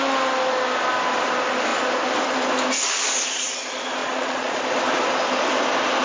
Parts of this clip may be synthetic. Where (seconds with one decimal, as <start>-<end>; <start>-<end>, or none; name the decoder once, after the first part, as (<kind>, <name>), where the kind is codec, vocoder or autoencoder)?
4.0-4.6 (vocoder, Vocos)